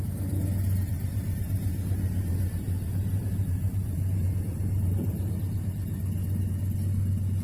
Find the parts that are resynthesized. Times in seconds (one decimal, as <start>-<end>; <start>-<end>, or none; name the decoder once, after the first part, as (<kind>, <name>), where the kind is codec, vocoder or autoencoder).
0.9-5.3 (vocoder, BigVGAN v2)